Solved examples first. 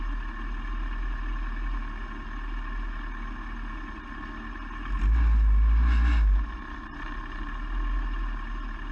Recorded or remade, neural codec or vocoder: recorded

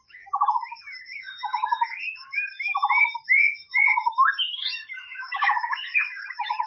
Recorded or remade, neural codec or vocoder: remade, autoencoder, DAC-VAE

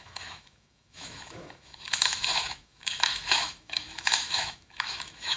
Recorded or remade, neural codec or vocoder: remade, autoencoder, DAC-VAE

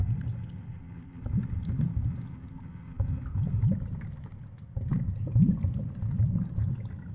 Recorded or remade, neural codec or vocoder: recorded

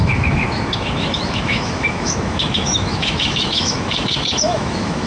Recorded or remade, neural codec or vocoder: remade, autoencoder, DAC-VAE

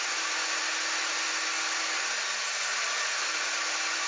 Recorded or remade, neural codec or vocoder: recorded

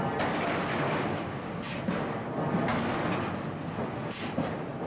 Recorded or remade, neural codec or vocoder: recorded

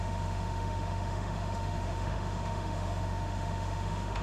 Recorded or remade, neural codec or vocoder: remade, autoencoder, DAC-VAE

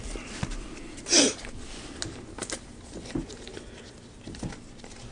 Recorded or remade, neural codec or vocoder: recorded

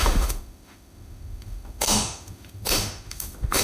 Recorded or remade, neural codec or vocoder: remade, autoencoder, DAC-VAE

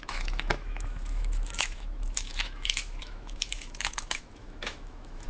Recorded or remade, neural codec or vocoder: remade, autoencoder, DAC-VAE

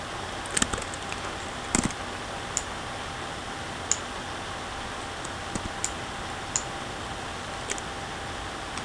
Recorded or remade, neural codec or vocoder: recorded